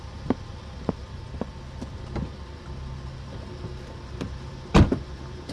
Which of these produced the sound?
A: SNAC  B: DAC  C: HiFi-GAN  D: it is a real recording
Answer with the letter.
D